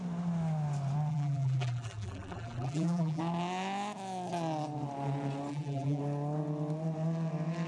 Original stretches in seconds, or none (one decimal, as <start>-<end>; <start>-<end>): 0.0-1.1; 3.2-5.5; 6.0-7.7